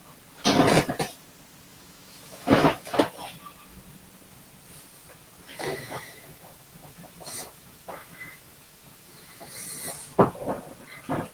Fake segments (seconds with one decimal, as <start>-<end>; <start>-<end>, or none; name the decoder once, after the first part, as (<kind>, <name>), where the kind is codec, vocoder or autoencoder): 1.7-3.0 (autoencoder, DAC-VAE); 5.5-9.5